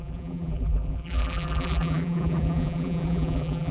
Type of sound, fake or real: fake